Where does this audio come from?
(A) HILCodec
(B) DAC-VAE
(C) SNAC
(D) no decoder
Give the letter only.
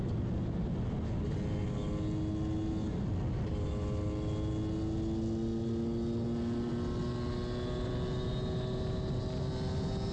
D